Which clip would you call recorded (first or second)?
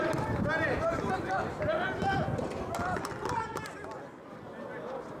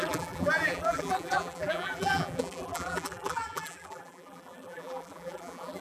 first